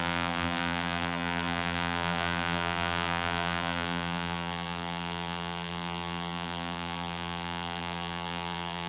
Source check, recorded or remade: remade